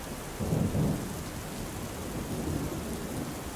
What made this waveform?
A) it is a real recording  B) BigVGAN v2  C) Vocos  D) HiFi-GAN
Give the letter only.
A